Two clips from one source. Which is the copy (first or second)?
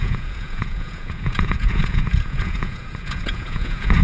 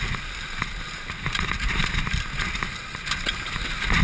first